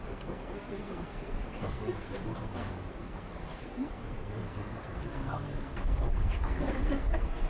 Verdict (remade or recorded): remade